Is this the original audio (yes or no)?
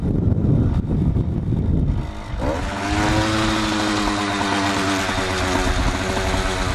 yes